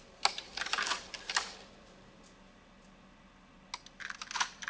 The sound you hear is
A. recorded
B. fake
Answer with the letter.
A